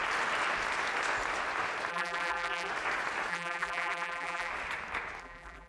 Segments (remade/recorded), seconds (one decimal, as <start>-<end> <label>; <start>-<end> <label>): 0.0-1.9 recorded; 1.9-2.7 remade; 2.7-3.3 recorded; 3.3-4.5 remade; 4.5-5.2 recorded; 5.2-5.7 remade